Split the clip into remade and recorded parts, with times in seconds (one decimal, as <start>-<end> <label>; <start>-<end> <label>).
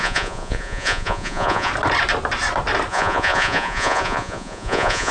0.0-1.7 remade; 1.7-2.9 recorded; 2.9-5.1 remade